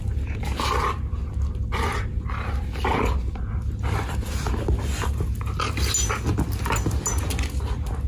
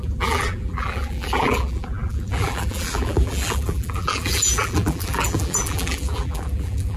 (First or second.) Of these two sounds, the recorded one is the first